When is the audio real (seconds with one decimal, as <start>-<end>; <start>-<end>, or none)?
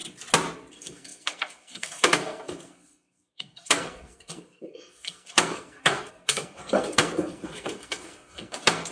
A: 0.0-0.7